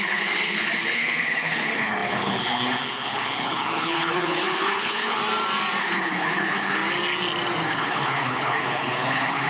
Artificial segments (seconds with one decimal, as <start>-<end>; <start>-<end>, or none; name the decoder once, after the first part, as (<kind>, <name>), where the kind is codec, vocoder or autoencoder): 0.0-5.2 (codec, HILCodec); 5.8-6.8; 7.7-9.5